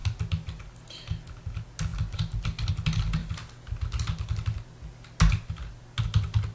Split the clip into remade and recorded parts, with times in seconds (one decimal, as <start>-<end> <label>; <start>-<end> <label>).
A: 0.0-6.5 recorded